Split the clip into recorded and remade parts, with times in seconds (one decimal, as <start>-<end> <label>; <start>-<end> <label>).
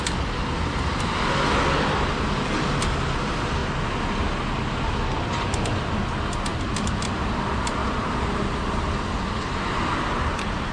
0.0-7.8 recorded; 7.8-9.0 remade; 9.0-10.7 recorded